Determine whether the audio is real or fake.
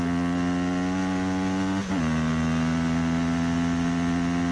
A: real